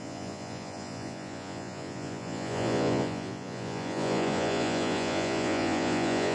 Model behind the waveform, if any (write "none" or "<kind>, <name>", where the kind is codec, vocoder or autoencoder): vocoder, Vocos